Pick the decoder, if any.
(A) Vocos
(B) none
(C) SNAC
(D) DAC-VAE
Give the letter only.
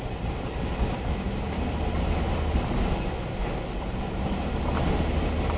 B